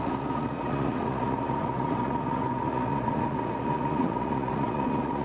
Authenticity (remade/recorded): remade